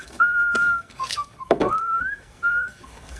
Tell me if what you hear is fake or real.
fake